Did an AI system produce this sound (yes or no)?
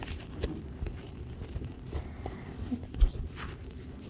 no